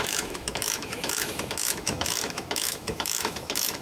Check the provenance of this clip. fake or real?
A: fake